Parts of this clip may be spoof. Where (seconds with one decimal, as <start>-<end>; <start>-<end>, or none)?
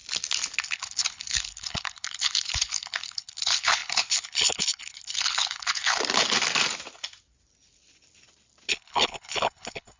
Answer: 0.6-6.0; 8.7-10.0